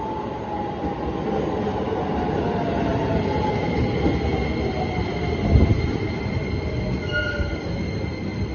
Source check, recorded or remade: recorded